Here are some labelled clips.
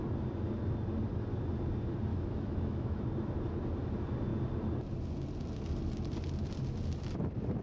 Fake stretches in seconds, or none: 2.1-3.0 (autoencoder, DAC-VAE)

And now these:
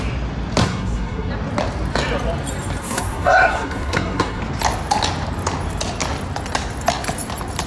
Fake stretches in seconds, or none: 0.6-1.3 (codec, SNAC); 2.8-4.4

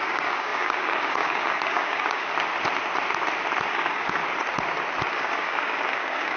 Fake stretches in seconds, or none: 0.0-2.3 (codec, DAC); 3.7-4.2; 5.1-6.4

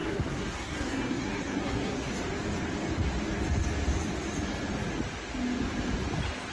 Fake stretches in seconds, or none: 0.0-2.1 (codec, SNAC)

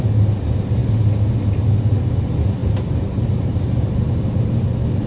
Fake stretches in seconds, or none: 2.6-3.9 (vocoder, BigVGAN v2)

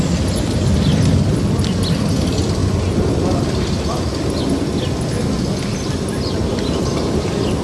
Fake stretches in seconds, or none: none

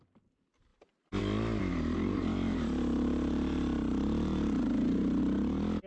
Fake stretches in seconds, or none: 1.7-5.2 (vocoder, BigVGAN v2)

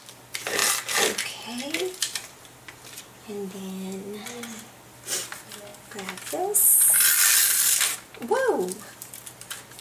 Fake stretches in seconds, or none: none